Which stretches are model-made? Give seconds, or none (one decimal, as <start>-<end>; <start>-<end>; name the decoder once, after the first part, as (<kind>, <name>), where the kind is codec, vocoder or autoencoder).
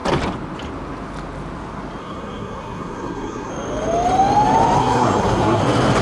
2.0-3.5 (codec, SNAC); 4.8-5.6